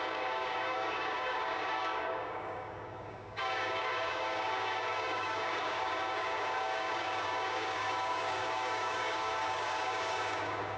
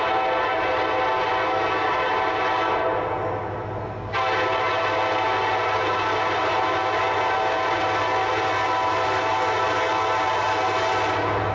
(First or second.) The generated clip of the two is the first